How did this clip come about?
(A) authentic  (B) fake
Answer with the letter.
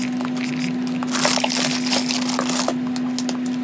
A